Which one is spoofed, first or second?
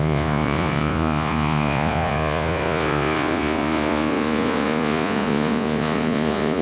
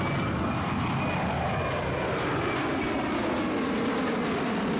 first